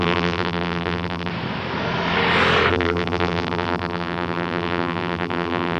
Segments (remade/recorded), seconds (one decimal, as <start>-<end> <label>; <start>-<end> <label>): 0.0-1.3 remade; 1.3-2.7 recorded; 2.7-5.8 remade